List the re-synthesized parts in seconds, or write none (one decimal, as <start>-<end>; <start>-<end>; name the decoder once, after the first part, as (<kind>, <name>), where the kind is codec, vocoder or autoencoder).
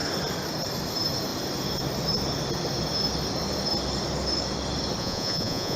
5.0-5.8 (vocoder, Vocos)